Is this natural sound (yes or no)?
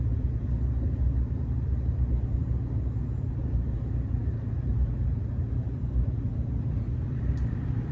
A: no